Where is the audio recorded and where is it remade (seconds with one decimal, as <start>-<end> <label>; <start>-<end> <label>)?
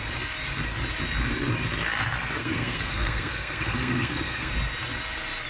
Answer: 0.0-2.4 recorded; 2.4-4.5 remade; 4.5-5.5 recorded